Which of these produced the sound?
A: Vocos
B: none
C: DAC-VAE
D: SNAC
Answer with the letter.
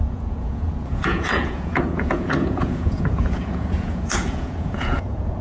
A